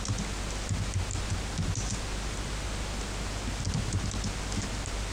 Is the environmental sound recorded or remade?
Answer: recorded